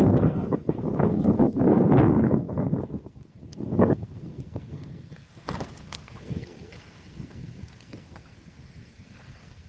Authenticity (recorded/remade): remade